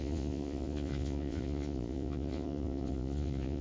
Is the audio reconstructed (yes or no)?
yes